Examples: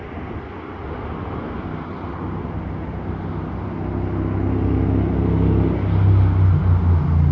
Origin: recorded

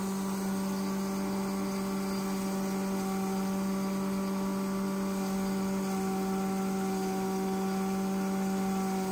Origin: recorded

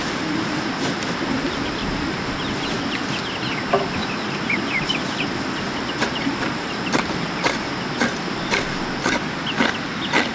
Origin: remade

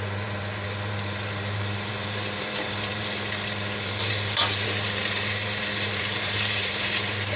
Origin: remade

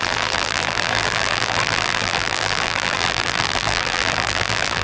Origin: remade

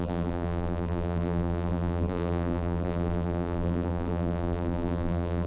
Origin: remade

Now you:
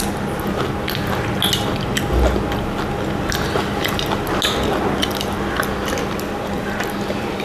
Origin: recorded